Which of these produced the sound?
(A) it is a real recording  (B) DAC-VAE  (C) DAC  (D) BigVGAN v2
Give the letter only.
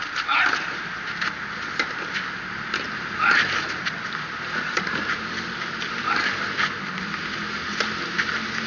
A